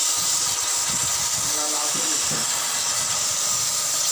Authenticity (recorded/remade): recorded